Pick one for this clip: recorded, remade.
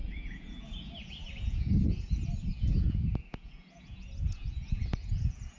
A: remade